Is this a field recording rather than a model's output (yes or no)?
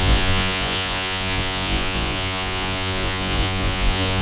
no